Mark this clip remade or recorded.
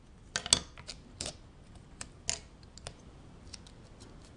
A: recorded